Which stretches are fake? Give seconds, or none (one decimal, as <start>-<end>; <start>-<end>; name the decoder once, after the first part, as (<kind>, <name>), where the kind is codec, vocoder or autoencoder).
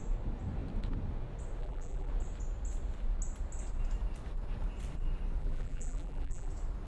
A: 1.6-2.1 (vocoder, BigVGAN v2); 5.4-6.5